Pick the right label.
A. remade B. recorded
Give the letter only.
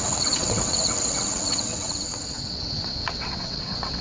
A